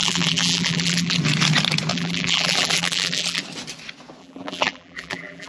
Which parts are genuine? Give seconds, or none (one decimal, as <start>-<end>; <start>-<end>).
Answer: 1.2-1.9; 3.4-4.2